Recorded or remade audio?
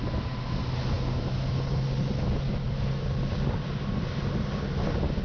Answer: recorded